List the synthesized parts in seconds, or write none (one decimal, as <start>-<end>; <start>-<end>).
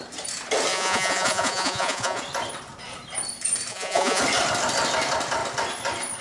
0.7-2.2; 3.7-4.2